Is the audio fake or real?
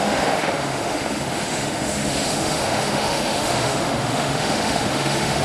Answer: fake